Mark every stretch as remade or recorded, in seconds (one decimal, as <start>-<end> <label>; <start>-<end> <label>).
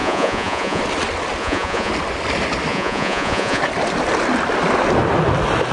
0.0-0.8 remade; 0.8-1.4 recorded; 1.4-1.9 remade; 1.9-2.7 recorded; 2.7-3.6 remade; 3.6-5.7 recorded